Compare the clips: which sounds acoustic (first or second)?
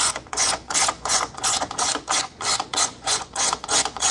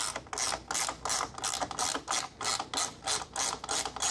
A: second